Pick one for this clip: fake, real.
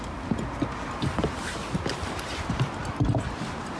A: real